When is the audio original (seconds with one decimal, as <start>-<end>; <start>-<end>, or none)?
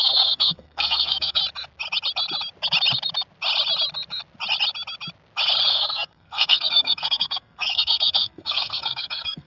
1.4-5.7